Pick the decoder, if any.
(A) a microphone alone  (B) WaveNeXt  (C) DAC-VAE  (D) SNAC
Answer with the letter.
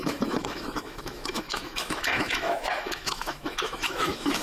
C